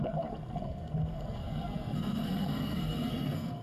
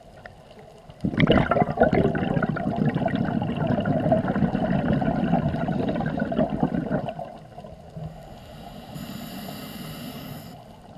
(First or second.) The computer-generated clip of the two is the first